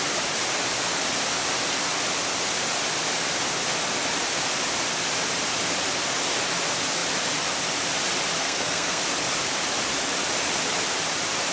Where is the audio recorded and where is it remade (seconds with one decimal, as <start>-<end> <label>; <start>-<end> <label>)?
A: 0.0-8.4 recorded; 8.4-9.0 remade; 9.0-11.5 recorded